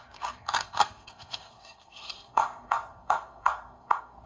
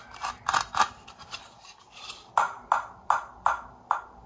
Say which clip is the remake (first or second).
first